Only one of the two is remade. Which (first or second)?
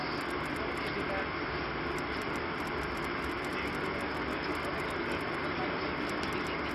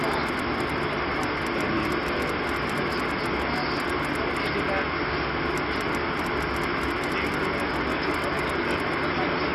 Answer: first